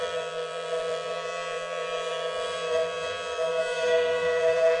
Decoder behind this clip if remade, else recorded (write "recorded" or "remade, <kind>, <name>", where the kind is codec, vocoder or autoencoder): remade, vocoder, BigVGAN v2